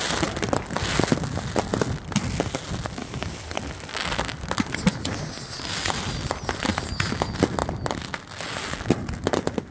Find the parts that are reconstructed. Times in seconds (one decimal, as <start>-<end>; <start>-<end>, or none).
1.7-2.2; 3.0-5.3